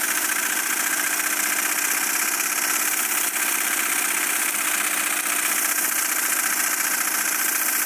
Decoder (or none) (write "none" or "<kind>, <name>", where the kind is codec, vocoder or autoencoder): none